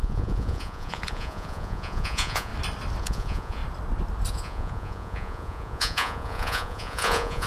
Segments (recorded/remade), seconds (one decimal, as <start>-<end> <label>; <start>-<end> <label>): 0.0-2.5 remade; 2.5-3.0 recorded; 3.0-3.6 remade; 3.6-4.3 recorded; 4.3-7.5 remade